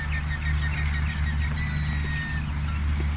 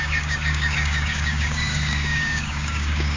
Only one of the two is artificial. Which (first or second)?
second